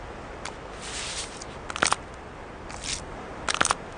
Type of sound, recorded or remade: recorded